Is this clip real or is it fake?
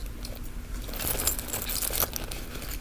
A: real